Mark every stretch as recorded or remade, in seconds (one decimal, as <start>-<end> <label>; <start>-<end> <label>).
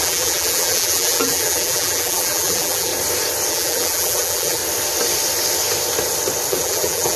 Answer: 0.0-2.9 remade; 2.9-3.5 recorded; 3.5-4.6 remade; 4.6-6.5 recorded; 6.5-7.2 remade